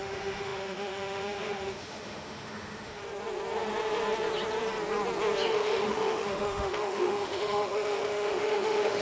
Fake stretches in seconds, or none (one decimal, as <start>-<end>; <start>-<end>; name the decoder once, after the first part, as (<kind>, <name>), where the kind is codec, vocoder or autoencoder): 0.0-3.0 (autoencoder, DAC-VAE); 5.5-9.0